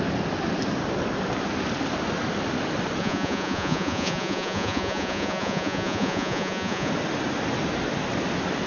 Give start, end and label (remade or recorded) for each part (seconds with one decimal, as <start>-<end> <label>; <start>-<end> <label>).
0.0-3.0 recorded; 3.0-6.9 remade; 6.9-8.7 recorded

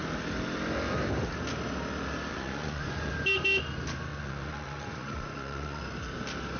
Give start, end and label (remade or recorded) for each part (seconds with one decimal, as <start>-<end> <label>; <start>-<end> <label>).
0.0-2.3 recorded; 2.3-3.1 remade; 3.1-4.1 recorded; 4.1-5.8 remade; 5.8-6.6 recorded